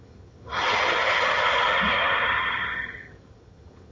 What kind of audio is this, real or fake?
fake